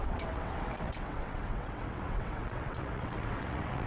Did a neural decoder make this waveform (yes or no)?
yes